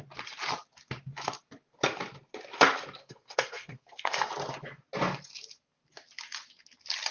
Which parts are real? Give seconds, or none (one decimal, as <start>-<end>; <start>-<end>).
0.0-3.0; 4.3-7.1